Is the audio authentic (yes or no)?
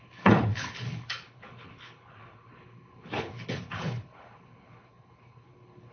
no